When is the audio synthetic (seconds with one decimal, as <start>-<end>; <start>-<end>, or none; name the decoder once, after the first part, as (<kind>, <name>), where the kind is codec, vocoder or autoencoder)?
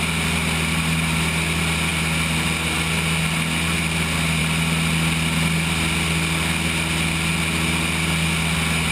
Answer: none